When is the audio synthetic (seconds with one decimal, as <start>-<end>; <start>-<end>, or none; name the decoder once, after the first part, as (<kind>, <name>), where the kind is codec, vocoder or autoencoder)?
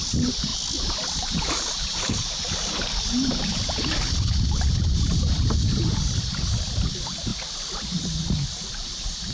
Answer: 0.0-0.5 (vocoder, BigVGAN v2); 1.1-7.3; 8.7-9.3